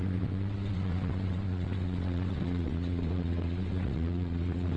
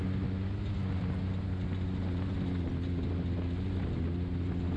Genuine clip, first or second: second